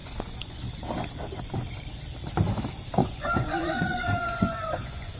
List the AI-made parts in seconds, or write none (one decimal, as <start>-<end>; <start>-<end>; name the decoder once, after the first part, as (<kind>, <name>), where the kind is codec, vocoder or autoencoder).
0.0-0.7 (vocoder, Vocos); 3.0-5.2